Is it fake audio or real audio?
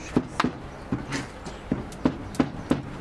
real